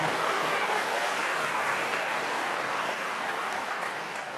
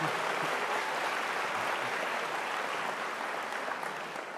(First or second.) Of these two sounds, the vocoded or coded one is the first